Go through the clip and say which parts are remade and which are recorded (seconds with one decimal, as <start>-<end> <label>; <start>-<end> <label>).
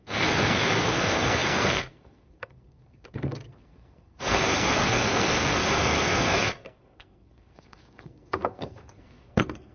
0.0-9.7 remade